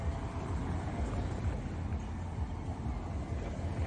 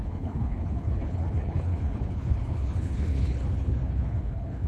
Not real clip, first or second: second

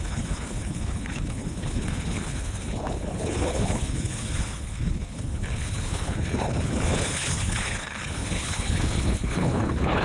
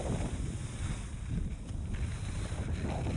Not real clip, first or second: first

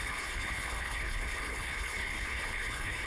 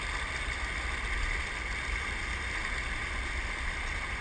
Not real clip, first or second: first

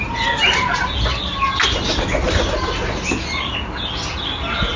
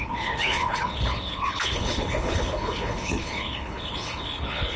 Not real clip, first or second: second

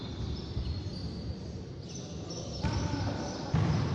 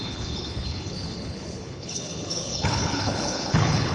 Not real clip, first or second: second